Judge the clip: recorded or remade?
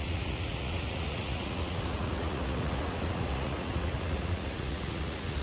remade